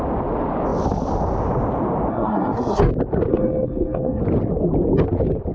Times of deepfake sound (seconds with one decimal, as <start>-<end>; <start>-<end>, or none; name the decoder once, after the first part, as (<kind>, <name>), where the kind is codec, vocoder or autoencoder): 2.1-2.9 (codec, SNAC); 3.3-4.2